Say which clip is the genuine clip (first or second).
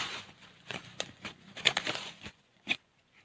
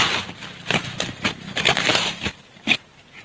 second